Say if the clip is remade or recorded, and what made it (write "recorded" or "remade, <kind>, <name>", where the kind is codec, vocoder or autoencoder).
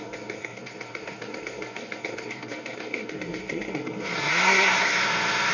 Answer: remade, codec, SNAC